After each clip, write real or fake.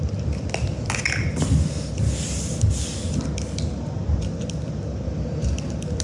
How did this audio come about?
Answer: real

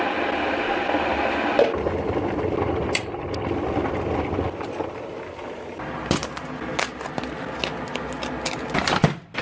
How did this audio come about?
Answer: real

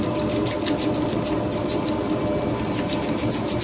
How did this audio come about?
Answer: real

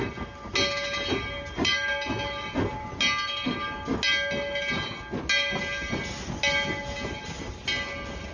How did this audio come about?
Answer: real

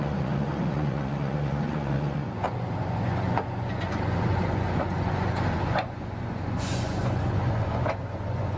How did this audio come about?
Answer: fake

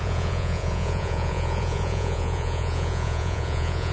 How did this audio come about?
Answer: fake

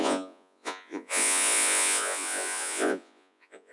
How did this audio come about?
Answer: fake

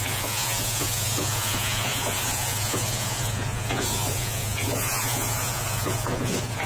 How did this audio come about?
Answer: fake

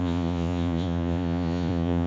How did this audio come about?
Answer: fake